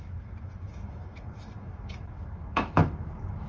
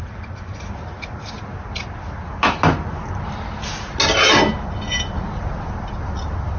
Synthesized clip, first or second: first